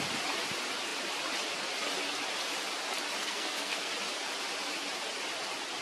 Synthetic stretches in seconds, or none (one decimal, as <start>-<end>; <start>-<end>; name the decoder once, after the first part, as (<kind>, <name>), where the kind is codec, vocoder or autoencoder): 3.2-3.9 (codec, SNAC)